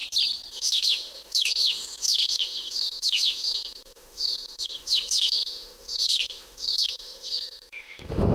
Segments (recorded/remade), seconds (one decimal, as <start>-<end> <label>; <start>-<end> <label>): 0.0-0.5 recorded; 0.5-8.3 remade